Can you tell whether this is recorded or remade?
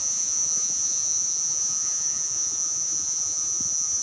remade